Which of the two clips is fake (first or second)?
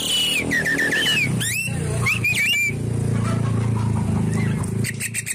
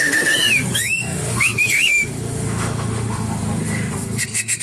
second